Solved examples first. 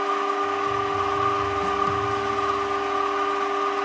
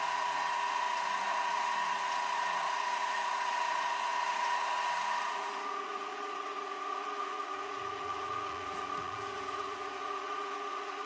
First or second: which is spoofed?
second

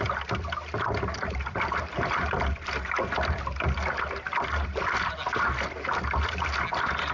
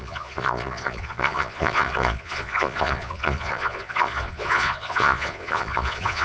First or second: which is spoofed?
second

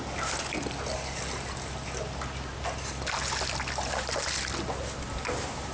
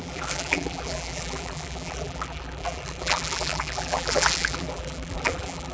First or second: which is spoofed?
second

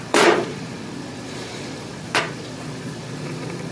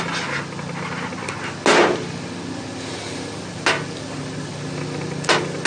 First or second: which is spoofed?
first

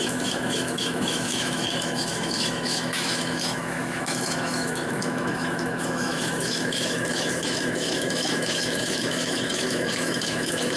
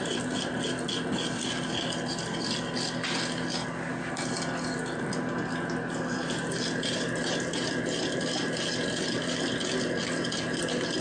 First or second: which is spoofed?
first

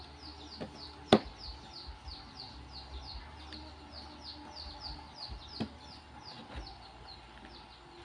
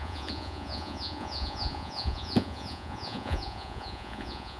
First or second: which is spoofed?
second